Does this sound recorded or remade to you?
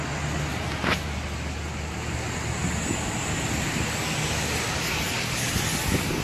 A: recorded